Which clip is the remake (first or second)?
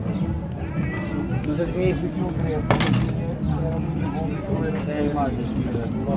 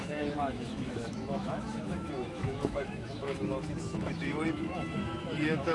second